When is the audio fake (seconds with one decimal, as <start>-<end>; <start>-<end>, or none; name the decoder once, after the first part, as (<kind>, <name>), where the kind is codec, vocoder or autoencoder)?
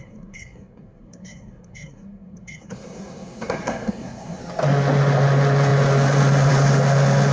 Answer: 0.0-4.4 (codec, SNAC)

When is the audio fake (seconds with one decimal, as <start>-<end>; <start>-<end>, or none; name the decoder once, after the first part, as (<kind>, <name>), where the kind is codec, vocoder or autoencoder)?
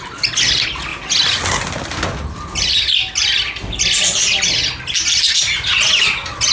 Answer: none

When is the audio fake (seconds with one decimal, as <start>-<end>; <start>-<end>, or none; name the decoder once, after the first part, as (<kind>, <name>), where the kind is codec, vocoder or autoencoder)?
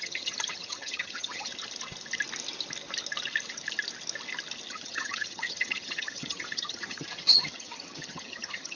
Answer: 0.0-1.5 (vocoder, HiFi-GAN); 4.7-8.8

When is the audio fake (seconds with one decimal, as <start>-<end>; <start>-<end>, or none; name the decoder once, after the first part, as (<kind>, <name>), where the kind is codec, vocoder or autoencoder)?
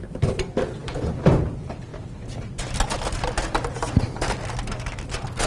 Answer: none